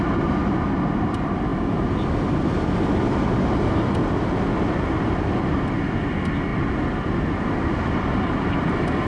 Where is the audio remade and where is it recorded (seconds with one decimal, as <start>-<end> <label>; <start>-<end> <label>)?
0.0-9.1 recorded